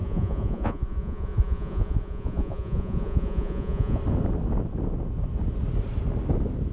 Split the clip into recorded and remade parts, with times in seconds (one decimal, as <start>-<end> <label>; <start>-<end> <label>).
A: 0.0-4.0 remade; 4.0-6.7 recorded